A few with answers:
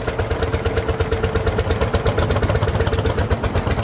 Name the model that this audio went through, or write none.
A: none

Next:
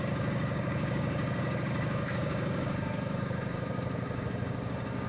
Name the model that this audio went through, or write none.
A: codec, DAC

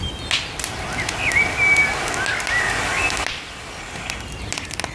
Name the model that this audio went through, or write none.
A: none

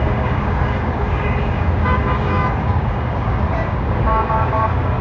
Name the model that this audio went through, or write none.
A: codec, DAC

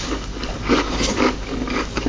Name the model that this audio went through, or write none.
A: codec, DAC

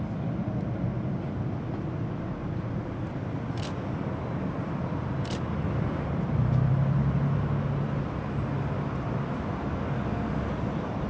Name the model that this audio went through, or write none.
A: none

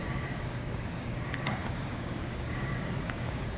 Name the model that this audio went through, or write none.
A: codec, DAC